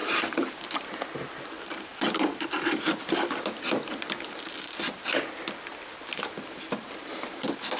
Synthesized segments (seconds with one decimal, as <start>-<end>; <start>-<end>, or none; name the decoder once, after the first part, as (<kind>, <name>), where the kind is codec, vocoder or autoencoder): 0.0-0.5 (vocoder, BigVGAN v2)